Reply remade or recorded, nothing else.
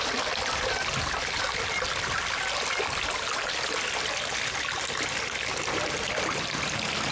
recorded